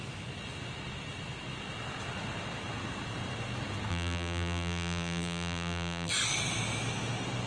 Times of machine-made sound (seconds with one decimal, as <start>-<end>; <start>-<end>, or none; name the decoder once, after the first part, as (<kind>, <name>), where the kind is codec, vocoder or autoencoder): 3.9-6.1 (vocoder, BigVGAN v2)